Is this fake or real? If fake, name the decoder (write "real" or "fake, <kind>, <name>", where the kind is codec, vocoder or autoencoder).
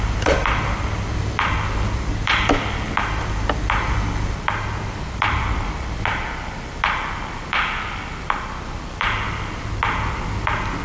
fake, vocoder, BigVGAN v2